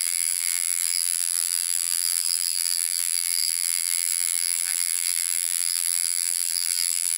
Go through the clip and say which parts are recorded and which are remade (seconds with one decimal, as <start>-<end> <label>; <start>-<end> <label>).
0.0-7.2 remade